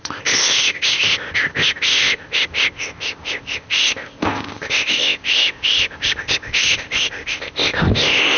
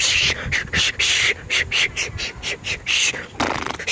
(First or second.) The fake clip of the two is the first